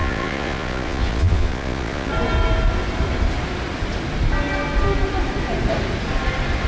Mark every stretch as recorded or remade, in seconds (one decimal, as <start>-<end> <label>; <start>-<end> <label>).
0.0-2.1 remade; 2.1-6.7 recorded